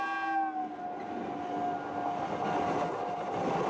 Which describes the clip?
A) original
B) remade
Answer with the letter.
A